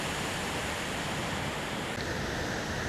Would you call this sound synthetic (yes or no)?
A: no